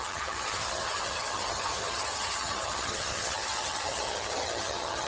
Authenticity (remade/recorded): remade